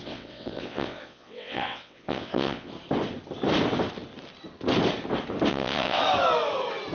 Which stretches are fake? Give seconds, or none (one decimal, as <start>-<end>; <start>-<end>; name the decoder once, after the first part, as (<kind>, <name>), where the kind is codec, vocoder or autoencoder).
0.0-2.7 (vocoder, WaveNeXt); 5.5-6.0